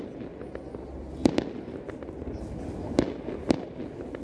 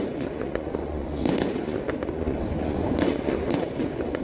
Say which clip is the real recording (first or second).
first